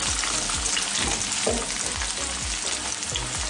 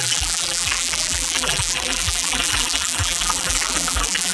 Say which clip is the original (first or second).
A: first